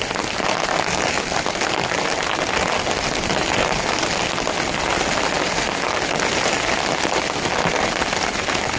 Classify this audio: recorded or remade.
recorded